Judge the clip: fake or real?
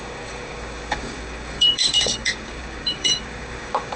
fake